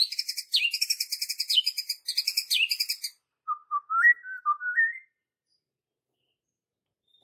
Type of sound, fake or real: real